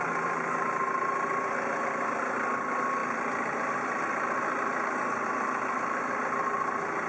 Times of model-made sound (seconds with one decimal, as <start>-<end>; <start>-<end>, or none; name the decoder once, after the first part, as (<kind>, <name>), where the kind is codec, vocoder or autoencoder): none